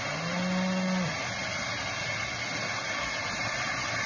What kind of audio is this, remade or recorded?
recorded